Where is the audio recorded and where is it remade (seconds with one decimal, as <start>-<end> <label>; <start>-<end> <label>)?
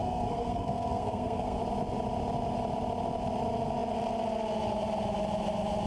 0.0-1.6 remade; 1.6-5.9 recorded